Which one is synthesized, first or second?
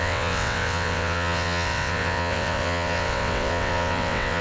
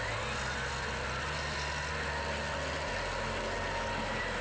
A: first